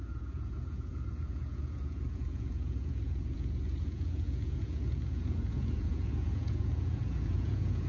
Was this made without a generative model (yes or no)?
no